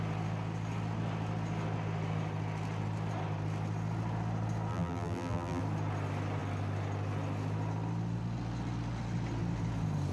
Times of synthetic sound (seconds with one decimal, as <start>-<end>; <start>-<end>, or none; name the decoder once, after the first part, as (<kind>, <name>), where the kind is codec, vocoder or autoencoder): 4.7-5.6 (vocoder, BigVGAN v2)